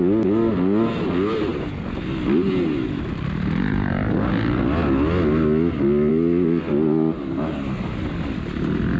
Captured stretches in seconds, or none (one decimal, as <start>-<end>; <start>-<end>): 0.0-9.0